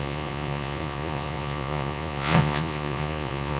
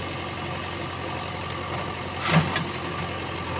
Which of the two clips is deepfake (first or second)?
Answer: first